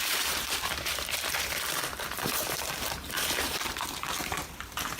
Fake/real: fake